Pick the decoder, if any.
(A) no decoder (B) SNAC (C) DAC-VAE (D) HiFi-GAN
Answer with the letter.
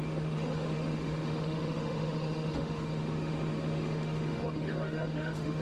C